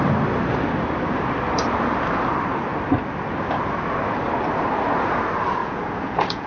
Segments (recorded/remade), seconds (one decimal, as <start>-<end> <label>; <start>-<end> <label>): 0.0-5.6 recorded; 5.6-6.5 remade